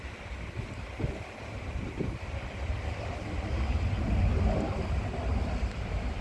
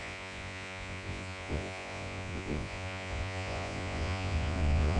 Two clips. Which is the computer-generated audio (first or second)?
second